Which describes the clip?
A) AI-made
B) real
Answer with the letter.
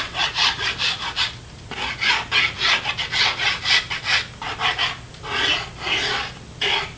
B